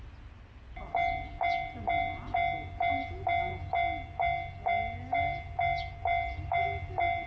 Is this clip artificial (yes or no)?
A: no